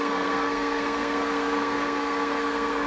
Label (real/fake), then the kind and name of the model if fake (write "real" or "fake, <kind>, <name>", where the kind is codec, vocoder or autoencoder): fake, codec, SNAC